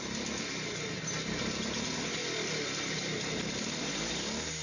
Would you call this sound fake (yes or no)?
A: no